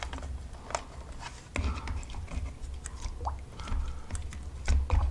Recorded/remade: recorded